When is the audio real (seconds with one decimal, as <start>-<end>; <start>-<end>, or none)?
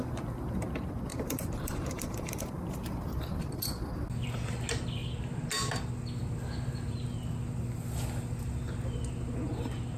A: 0.0-1.1; 2.4-10.0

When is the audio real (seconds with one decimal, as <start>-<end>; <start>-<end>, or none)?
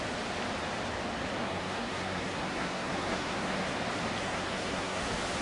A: 0.0-1.4; 3.7-4.2; 5.0-5.4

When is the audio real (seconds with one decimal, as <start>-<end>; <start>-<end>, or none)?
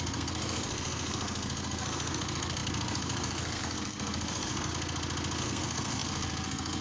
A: 4.7-5.4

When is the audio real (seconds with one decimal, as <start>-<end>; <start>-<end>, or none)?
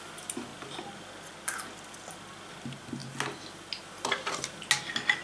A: 0.0-5.2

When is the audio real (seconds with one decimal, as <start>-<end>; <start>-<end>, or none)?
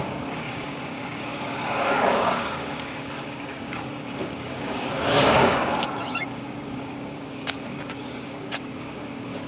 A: none